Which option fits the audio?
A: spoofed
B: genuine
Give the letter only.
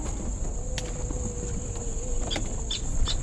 B